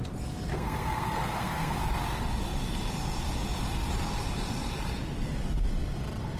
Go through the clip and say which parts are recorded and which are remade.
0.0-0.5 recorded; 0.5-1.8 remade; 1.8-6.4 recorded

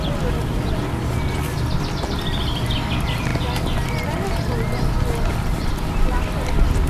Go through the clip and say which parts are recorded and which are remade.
0.0-6.9 recorded

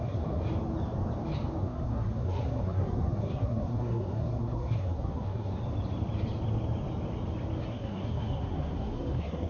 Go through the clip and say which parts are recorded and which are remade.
0.0-0.4 remade; 0.4-1.6 recorded; 1.6-5.5 remade; 5.5-7.7 recorded; 7.7-9.5 remade

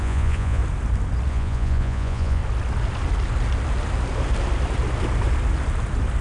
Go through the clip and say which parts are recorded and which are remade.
0.0-0.6 remade; 0.6-1.3 recorded; 1.3-2.4 remade; 2.4-6.2 recorded

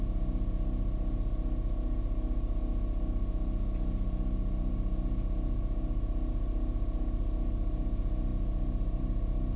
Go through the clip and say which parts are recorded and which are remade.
0.0-9.6 recorded

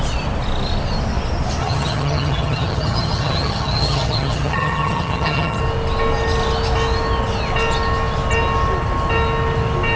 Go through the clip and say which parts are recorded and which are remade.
0.0-1.6 recorded; 1.6-5.6 remade; 5.6-10.0 recorded

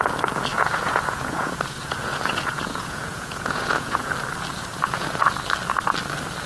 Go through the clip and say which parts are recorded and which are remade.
0.0-0.5 recorded; 0.5-4.1 remade; 4.1-4.7 recorded; 4.7-5.2 remade; 5.2-6.5 recorded